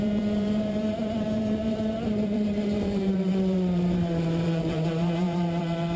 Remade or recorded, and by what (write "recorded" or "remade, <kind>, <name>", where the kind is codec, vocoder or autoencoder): remade, vocoder, BigVGAN v2